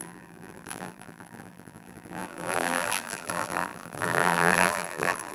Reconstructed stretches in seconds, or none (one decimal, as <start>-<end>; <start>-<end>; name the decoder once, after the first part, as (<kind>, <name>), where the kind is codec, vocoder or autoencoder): 0.0-5.3 (vocoder, BigVGAN v2)